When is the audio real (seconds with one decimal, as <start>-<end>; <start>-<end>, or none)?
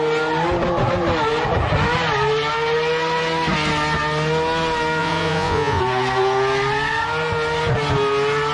0.0-5.0; 5.8-8.5